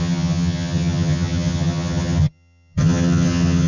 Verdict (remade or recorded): remade